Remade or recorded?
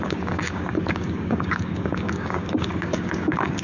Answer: remade